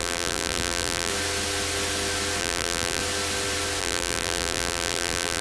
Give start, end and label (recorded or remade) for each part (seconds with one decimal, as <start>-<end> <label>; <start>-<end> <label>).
0.0-1.1 remade; 1.1-2.4 recorded; 2.4-3.0 remade; 3.0-3.8 recorded; 3.8-5.4 remade